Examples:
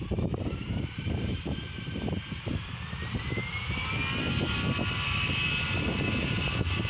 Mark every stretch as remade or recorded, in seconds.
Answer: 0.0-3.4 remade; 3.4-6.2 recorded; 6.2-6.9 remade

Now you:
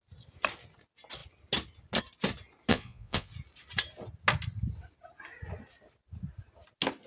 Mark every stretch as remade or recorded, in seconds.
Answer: 0.0-2.7 recorded; 2.7-3.3 remade; 3.3-7.1 recorded

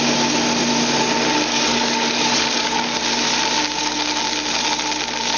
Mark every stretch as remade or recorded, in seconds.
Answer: 0.0-1.5 recorded; 1.5-3.0 remade; 3.0-5.4 recorded

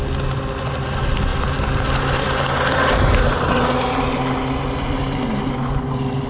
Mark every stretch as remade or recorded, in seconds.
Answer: 0.0-6.3 recorded